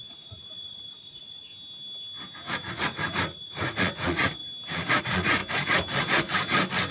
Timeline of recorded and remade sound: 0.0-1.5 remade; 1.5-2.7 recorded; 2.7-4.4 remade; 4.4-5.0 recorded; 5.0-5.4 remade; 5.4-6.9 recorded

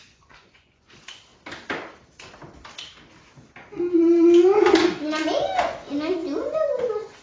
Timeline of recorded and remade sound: 0.0-1.3 remade; 1.3-5.6 recorded; 5.6-6.2 remade; 6.2-6.8 recorded; 6.8-7.2 remade